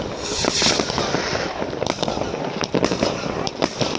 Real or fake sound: real